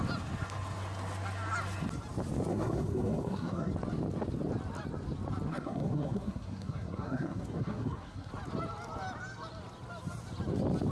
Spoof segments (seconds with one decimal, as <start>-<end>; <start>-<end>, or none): 2.5-3.7; 5.5-8.3